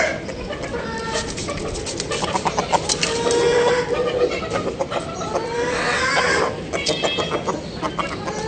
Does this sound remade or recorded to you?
recorded